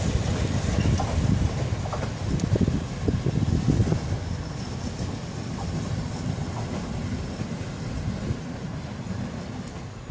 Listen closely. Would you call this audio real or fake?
real